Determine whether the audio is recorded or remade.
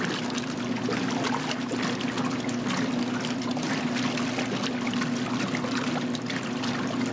recorded